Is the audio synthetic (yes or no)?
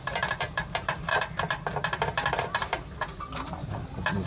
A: yes